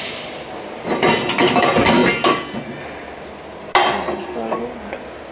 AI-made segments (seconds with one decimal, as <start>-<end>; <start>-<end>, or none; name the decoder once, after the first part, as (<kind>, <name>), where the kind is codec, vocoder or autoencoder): none